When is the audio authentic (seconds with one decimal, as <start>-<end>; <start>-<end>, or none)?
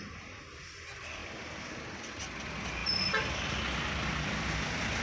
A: 0.0-5.0